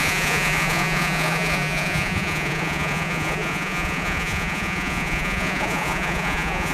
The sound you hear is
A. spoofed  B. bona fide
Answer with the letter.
A